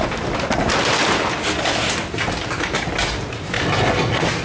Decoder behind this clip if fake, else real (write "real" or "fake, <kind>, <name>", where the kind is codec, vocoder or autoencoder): real